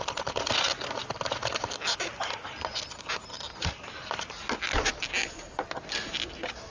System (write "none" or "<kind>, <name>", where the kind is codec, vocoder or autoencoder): none